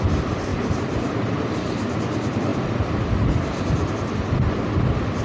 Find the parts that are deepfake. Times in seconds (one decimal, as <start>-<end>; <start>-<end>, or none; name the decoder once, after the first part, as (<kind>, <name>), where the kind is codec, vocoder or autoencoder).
0.5-1.4 (vocoder, BigVGAN v2)